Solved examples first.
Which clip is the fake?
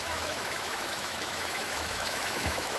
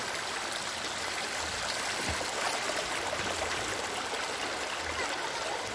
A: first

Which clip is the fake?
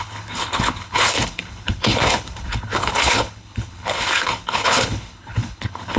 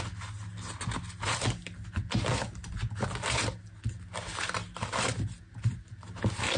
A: first